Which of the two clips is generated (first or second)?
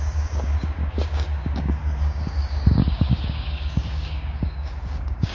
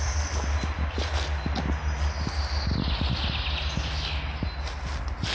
first